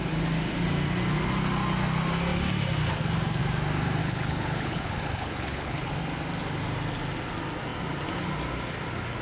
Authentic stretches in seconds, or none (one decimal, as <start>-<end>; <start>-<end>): 0.0-4.0; 5.9-9.2